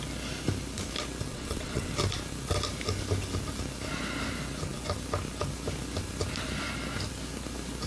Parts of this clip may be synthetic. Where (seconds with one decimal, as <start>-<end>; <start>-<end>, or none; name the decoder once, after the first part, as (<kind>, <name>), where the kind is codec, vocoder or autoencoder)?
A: 1.3-1.9 (vocoder, WaveNeXt)